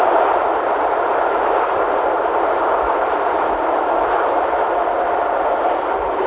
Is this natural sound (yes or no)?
no